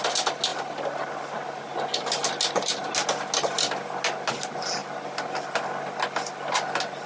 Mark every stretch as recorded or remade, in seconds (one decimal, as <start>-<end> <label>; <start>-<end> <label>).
0.0-7.1 recorded